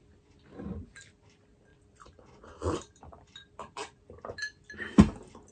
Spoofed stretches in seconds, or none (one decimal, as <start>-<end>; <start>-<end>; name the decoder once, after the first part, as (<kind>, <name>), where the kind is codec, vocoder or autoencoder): 1.7-4.0 (vocoder, BigVGAN v2)